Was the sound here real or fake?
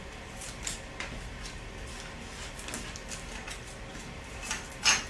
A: real